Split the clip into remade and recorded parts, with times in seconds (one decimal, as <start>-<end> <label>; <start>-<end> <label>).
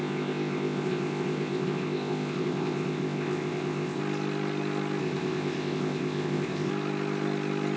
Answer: 0.0-4.0 remade; 4.0-5.0 recorded; 5.0-6.7 remade; 6.7-7.8 recorded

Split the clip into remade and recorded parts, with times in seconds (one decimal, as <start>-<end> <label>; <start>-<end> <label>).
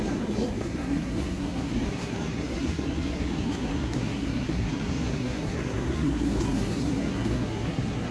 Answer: 0.0-8.1 remade